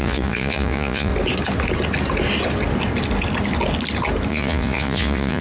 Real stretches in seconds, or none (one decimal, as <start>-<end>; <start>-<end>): 1.1-4.3